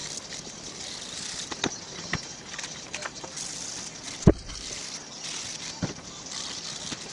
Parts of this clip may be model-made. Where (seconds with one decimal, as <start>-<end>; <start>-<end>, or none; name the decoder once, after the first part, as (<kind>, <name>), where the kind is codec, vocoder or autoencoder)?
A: 0.0-4.8 (vocoder, BigVGAN v2); 5.4-7.1